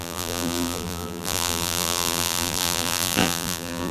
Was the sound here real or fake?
fake